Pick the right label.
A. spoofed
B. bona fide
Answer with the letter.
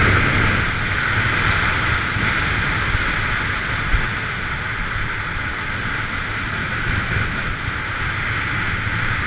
B